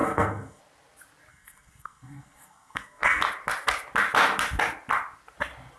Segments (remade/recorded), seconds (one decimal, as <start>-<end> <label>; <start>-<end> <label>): 0.0-0.6 remade; 0.6-1.3 recorded; 1.3-3.2 remade; 3.2-5.8 recorded